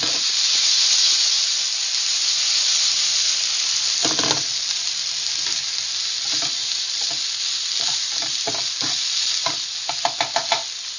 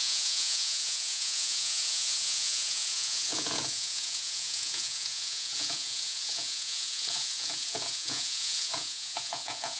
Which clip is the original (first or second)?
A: first